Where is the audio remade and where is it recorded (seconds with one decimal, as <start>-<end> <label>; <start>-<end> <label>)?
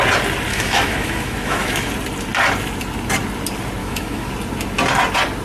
0.0-0.5 recorded; 0.5-1.9 remade; 1.9-3.8 recorded; 3.8-4.3 remade; 4.3-5.4 recorded